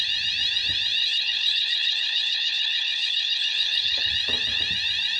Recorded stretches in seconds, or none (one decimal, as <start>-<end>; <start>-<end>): 0.0-1.0; 4.1-5.2